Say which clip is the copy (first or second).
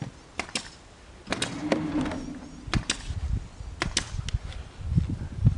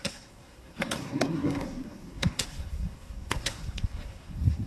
second